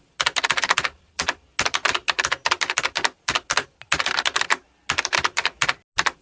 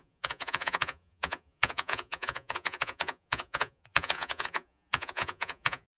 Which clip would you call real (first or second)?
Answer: first